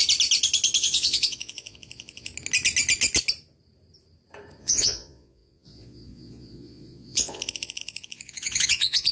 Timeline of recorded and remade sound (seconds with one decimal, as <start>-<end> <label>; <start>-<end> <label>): 0.0-0.8 recorded; 0.8-2.3 remade; 2.3-4.6 recorded; 4.6-9.1 remade